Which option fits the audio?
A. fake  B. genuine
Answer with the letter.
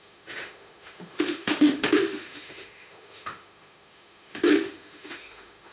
A